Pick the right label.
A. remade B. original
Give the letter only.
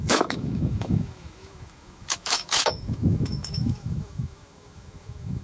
A